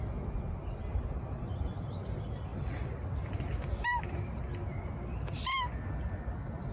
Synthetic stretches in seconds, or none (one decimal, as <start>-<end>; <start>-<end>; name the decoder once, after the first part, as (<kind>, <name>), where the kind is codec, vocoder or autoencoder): none